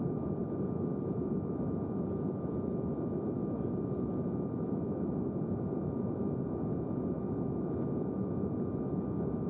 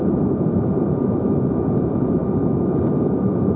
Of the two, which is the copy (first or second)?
second